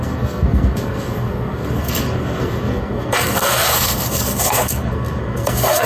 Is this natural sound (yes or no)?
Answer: no